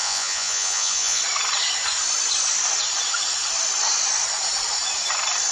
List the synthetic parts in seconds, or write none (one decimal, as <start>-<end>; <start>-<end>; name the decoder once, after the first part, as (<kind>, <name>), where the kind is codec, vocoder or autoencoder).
0.0-1.2 (vocoder, Vocos)

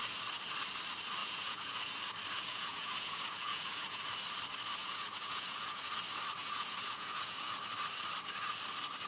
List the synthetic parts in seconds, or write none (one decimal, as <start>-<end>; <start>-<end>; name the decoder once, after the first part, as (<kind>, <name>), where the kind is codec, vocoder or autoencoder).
1.2-1.9 (vocoder, Vocos); 2.5-4.0; 4.8-5.9; 6.4-7.7

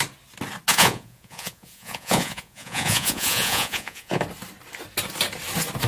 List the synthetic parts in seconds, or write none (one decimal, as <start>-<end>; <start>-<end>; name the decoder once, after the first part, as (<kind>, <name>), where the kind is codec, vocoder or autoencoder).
0.7-4.2 (vocoder, Vocos)

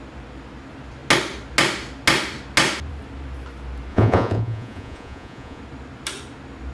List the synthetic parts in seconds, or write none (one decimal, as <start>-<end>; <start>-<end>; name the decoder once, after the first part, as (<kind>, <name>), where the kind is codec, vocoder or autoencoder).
3.9-5.6 (vocoder, Vocos)

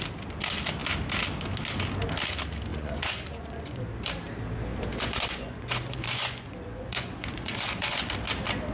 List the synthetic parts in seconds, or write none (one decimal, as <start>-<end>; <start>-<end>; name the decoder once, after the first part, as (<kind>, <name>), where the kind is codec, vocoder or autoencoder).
2.7-3.8 (vocoder, Vocos); 4.7-8.0

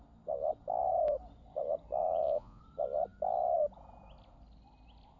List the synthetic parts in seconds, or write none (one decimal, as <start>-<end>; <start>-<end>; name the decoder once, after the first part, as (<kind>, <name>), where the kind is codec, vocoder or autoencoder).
2.0-2.6 (vocoder, Vocos)